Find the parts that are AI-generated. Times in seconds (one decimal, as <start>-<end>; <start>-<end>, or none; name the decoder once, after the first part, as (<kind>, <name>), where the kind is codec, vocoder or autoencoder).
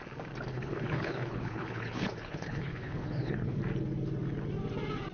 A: 0.5-3.6 (codec, HILCodec)